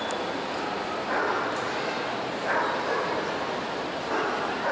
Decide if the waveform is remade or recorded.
recorded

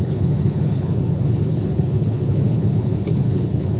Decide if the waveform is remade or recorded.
remade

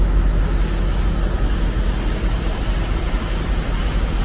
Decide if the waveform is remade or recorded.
recorded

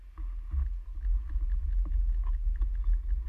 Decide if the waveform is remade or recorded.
recorded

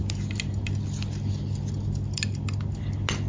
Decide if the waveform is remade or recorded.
recorded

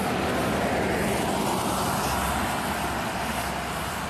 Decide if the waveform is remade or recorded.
recorded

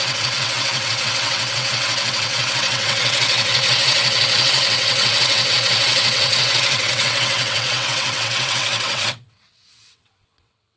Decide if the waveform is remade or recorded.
remade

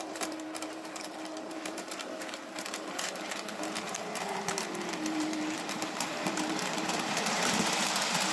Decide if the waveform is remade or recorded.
remade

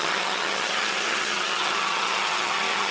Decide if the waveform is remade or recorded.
remade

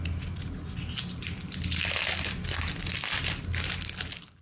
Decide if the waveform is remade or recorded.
recorded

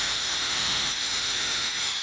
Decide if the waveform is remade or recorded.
remade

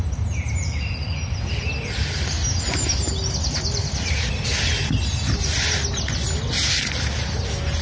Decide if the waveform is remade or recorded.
recorded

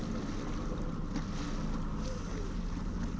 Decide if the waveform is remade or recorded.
recorded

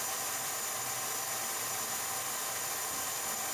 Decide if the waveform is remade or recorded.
remade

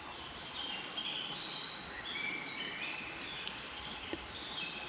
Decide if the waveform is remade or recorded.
recorded